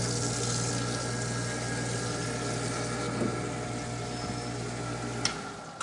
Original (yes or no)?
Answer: yes